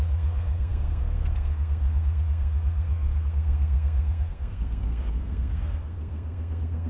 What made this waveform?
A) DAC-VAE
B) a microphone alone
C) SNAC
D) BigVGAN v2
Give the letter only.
C